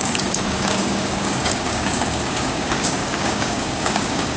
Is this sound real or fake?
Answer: fake